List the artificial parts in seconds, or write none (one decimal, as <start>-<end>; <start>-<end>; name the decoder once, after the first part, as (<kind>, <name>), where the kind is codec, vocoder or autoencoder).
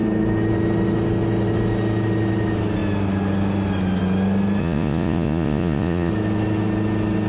4.6-6.1 (vocoder, Vocos)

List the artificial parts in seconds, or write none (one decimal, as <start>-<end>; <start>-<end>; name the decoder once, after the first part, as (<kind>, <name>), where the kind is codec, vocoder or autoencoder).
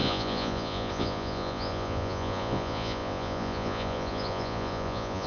0.0-5.3 (vocoder, Vocos)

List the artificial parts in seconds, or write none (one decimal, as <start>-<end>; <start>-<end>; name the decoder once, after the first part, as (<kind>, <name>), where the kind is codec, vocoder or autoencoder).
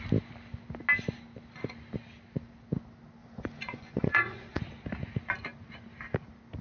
3.2-4.6 (vocoder, Vocos)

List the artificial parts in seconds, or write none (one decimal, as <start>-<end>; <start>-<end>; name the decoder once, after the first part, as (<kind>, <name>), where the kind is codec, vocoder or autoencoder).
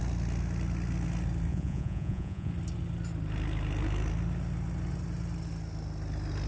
1.5-2.5 (vocoder, Vocos)